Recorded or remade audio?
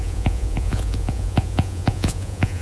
remade